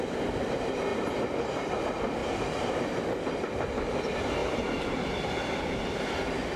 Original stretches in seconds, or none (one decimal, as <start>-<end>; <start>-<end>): 0.0-2.2; 3.0-4.4; 6.0-6.6